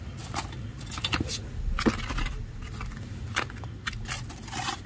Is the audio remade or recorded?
recorded